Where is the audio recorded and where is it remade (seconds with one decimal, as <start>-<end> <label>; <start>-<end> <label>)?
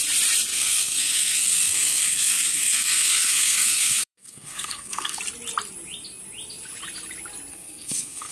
0.0-0.5 recorded; 0.5-5.2 remade; 5.2-7.5 recorded; 7.5-8.3 remade